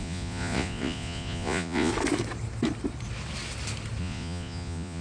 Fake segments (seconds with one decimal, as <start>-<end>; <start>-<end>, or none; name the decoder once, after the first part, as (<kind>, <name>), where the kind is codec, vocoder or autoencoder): 0.0-1.9 (vocoder, Vocos); 4.0-5.0